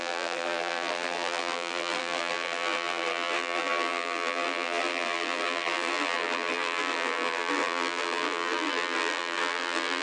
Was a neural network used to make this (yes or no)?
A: yes